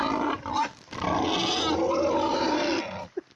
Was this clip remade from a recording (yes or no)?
no